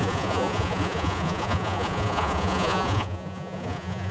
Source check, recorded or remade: remade